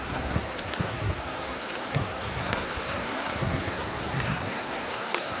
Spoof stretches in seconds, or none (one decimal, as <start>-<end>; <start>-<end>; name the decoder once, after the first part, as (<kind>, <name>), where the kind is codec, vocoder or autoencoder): 0.0-5.4 (codec, SNAC)

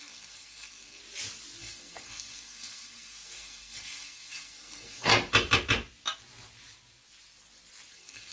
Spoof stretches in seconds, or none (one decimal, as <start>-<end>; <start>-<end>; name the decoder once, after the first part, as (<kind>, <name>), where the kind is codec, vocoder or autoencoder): 0.0-1.0 (codec, SNAC); 1.6-5.1; 7.9-8.3

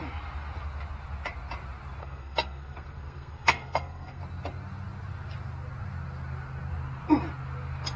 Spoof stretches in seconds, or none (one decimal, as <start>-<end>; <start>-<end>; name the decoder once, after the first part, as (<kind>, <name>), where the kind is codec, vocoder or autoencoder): 2.0-4.2 (codec, SNAC)

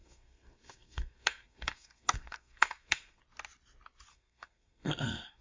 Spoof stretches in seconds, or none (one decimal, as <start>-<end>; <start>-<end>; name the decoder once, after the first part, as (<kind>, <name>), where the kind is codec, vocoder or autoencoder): 0.0-3.2 (codec, SNAC); 4.1-5.4

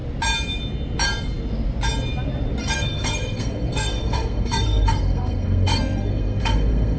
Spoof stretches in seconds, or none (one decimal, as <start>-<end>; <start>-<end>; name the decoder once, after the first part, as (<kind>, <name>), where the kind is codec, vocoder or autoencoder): 2.6-7.0 (codec, SNAC)

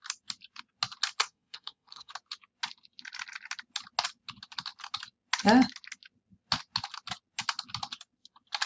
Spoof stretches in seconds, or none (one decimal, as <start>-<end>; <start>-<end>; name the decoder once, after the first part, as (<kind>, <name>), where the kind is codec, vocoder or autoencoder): 1.2-2.1 (codec, SNAC)